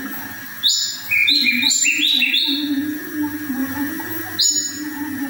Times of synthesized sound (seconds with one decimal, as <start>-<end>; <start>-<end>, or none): 1.2-2.3

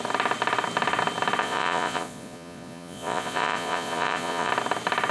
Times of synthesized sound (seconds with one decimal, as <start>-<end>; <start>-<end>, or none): 1.4-4.5

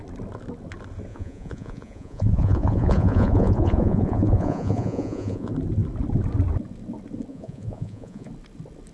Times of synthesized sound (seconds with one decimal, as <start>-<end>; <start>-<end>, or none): 1.1-5.5; 7.3-8.3

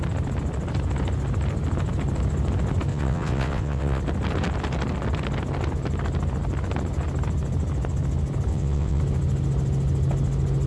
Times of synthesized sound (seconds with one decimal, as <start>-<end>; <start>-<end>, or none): 2.9-4.0; 8.5-9.0

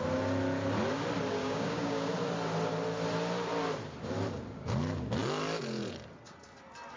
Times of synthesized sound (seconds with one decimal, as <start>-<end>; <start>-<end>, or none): 1.4-2.1

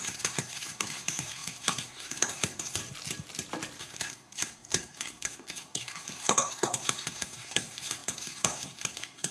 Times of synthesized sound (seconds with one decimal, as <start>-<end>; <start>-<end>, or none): 0.0-2.8; 3.8-9.3

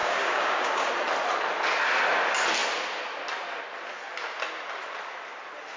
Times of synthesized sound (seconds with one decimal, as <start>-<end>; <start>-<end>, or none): 0.0-0.9

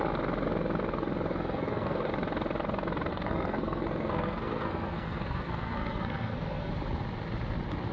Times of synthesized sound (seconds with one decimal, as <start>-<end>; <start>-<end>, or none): 1.3-2.1; 3.1-6.7